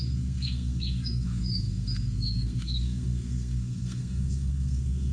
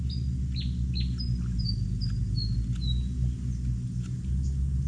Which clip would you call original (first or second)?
second